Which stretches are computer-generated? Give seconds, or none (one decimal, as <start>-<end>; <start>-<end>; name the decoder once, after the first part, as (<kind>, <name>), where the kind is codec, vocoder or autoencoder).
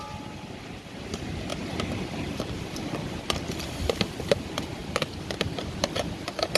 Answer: 1.5-4.0 (vocoder, BigVGAN v2); 4.8-6.6